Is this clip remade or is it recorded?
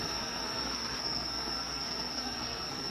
remade